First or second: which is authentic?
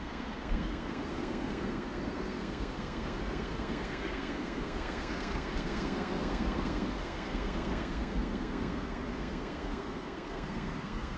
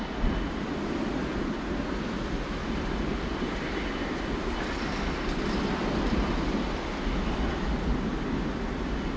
second